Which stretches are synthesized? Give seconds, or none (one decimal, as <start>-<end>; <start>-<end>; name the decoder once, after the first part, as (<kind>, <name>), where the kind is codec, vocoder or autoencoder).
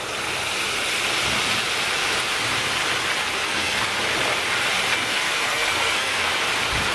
3.2-3.8 (codec, SNAC); 4.9-6.3